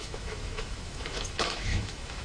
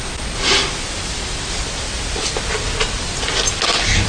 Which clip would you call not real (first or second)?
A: first